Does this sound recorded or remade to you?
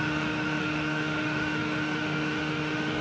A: remade